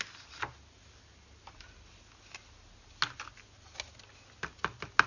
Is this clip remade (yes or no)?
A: no